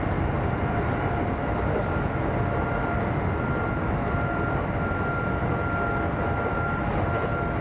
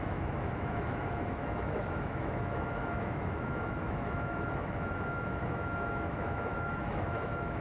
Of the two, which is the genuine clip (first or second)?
first